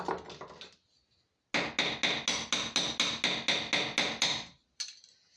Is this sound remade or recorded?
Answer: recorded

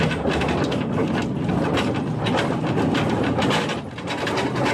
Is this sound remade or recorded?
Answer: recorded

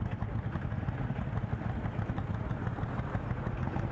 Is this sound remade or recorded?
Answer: recorded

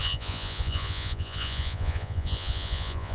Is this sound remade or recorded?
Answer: remade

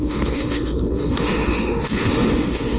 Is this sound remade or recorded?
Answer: remade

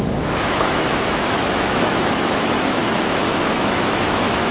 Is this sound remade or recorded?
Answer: remade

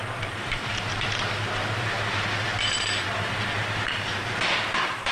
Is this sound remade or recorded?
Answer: remade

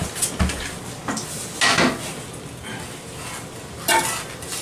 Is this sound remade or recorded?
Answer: recorded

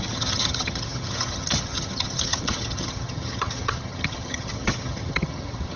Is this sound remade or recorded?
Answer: remade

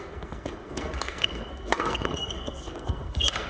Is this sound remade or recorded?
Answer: remade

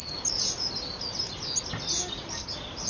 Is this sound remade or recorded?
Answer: recorded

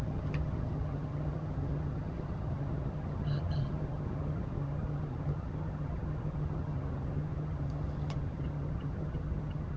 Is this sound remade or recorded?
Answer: remade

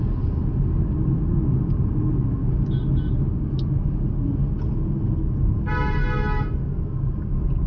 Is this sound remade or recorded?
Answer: recorded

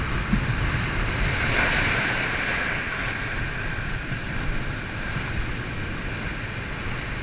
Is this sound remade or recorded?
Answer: recorded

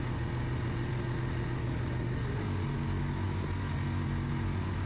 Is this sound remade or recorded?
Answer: recorded